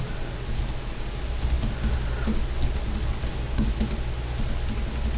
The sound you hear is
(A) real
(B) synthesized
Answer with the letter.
A